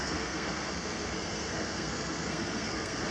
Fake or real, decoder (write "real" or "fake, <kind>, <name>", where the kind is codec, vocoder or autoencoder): fake, codec, SNAC